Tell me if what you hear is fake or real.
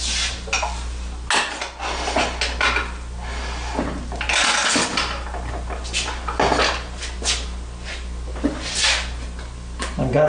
real